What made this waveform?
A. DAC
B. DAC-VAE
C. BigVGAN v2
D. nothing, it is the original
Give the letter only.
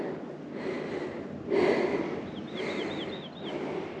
D